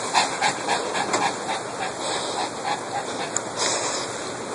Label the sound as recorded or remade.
recorded